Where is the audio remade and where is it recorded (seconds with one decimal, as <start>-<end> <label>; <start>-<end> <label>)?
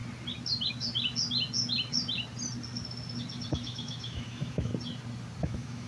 0.0-3.5 recorded; 3.5-4.7 remade; 4.7-5.4 recorded; 5.4-5.9 remade